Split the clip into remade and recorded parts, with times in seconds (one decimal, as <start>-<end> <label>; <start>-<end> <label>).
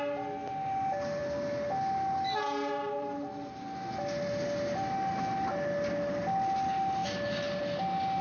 0.0-8.2 recorded